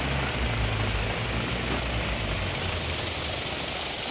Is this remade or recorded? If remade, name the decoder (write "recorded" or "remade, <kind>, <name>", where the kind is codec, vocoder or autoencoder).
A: recorded